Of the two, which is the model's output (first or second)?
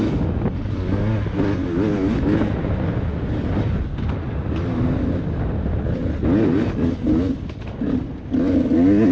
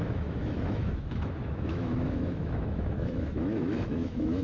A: second